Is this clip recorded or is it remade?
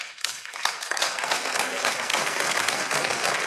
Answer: remade